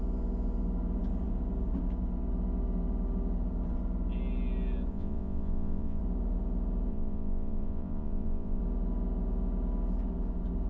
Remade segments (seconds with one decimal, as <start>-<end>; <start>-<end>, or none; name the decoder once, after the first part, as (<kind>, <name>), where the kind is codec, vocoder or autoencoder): 4.9-6.0 (vocoder, Vocos); 6.9-8.6

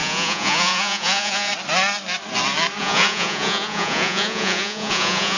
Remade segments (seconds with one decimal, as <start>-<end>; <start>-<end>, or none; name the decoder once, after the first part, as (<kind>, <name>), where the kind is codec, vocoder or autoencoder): 0.0-1.5 (vocoder, Vocos); 2.8-5.4

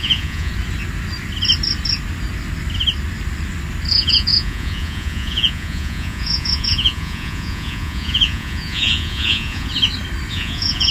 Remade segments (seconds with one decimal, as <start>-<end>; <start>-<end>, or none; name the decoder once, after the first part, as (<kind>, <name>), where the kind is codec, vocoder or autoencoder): 0.0-0.5 (vocoder, Vocos); 3.9-9.7; 10.3-10.9

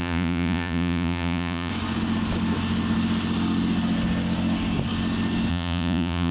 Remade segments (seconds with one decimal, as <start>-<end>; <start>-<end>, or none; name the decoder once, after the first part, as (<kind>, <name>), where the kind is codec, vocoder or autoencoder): 0.0-1.7 (vocoder, Vocos); 5.5-6.3

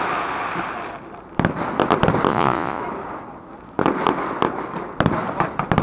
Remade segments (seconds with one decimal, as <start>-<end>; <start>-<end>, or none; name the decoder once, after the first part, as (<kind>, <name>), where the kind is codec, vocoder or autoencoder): 2.3-2.8 (vocoder, Vocos)

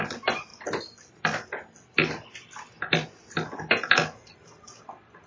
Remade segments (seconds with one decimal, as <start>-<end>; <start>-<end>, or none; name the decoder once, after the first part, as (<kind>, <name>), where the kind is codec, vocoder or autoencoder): none

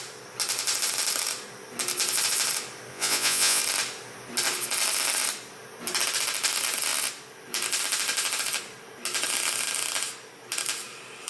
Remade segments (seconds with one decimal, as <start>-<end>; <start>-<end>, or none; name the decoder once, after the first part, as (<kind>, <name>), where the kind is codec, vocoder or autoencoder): 2.9-3.6 (vocoder, Vocos)